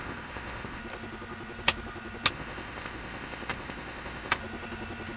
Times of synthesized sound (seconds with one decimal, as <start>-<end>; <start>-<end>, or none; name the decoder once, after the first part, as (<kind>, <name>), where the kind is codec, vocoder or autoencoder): 0.0-0.8 (codec, ZipCodec); 2.3-4.4